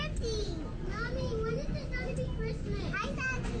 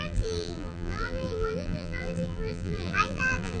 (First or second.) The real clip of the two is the first